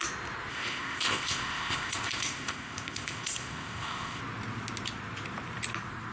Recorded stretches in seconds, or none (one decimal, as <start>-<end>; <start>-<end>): 0.0-0.5; 4.2-6.1